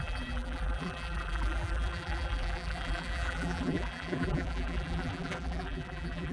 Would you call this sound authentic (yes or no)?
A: no